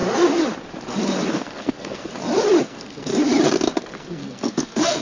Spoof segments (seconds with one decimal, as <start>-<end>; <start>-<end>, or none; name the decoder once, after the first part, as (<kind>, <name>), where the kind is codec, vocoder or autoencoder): 1.3-2.1 (codec, SNAC); 2.6-3.1; 3.8-5.0